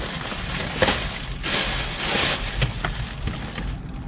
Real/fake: real